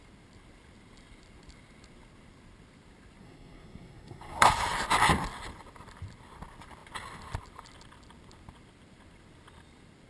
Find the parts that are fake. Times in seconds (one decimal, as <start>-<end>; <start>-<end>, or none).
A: 3.2-4.5